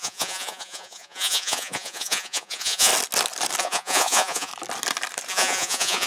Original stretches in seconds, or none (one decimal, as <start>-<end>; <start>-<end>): 2.9-3.6; 4.5-5.3